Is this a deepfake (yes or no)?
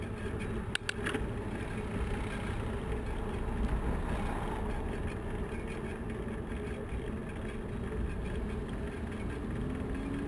no